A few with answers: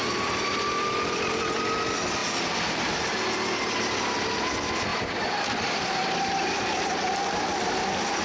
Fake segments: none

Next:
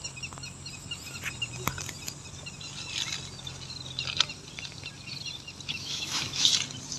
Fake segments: 5.7-6.5 (autoencoder, DAC-VAE)

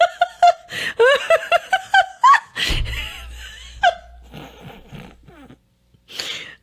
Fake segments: 2.1-2.7 (codec, DAC)